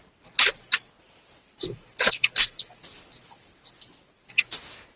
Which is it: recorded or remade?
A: recorded